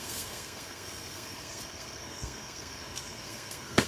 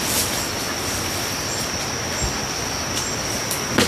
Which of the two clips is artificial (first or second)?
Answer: first